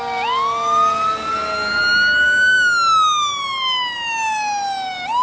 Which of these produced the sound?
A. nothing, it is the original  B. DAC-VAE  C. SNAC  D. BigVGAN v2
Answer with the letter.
A